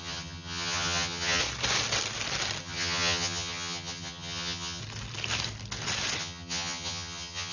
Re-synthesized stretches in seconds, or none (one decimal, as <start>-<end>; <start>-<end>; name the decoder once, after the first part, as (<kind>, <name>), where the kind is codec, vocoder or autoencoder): 0.0-1.4 (vocoder, HiFi-GAN); 2.6-4.8; 6.2-7.5